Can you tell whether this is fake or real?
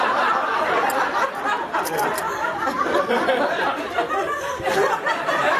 fake